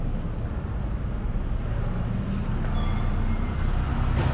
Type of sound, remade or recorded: recorded